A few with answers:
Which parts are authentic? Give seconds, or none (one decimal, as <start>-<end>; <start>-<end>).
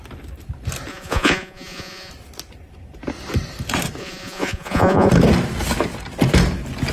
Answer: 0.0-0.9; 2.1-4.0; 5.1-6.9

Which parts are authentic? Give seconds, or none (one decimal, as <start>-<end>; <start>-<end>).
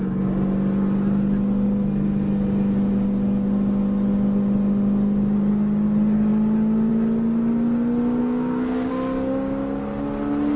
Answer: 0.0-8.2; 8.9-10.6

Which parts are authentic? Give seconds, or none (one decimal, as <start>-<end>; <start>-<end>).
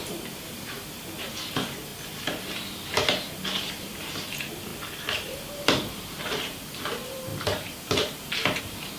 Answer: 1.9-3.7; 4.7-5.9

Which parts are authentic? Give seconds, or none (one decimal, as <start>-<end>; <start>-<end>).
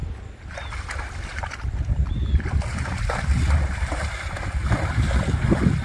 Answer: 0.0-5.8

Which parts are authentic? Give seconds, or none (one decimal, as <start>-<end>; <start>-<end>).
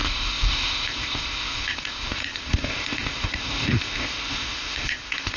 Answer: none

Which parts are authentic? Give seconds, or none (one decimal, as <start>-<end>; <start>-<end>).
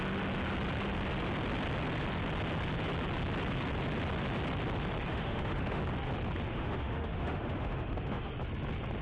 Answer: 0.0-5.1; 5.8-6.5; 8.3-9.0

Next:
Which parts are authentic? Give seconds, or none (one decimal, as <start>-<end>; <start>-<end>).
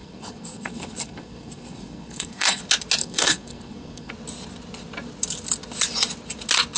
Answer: 2.6-3.0; 4.1-6.8